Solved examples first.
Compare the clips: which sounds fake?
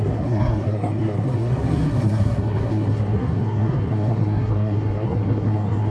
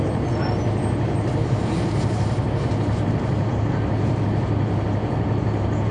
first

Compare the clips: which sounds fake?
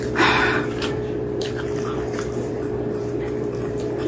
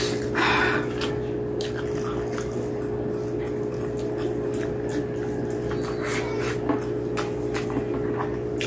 first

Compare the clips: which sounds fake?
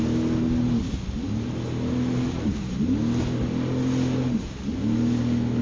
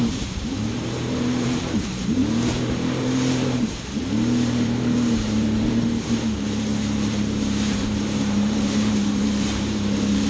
second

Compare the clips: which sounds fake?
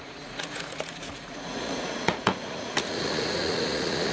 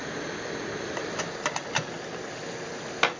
first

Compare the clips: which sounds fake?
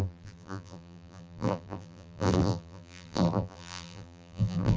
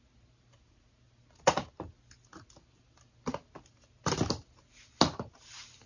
first